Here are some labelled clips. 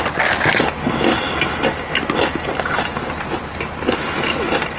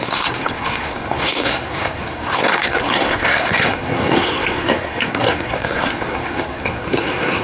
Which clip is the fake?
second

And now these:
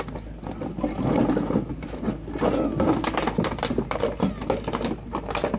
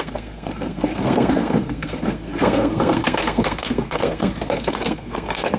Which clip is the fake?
second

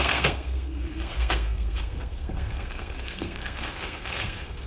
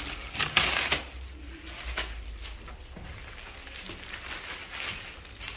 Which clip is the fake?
first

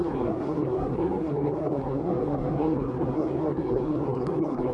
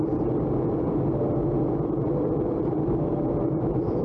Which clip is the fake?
first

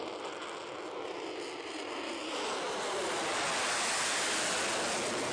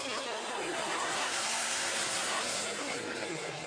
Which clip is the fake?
second